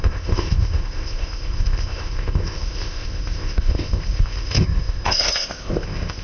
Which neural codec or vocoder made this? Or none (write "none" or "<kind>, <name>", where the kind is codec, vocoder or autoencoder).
codec, ZipCodec